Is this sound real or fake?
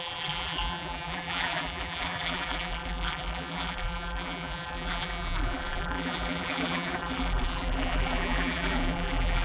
fake